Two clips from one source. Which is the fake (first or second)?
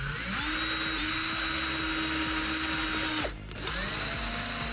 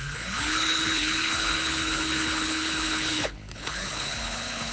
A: second